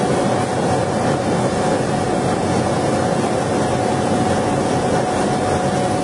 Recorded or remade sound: recorded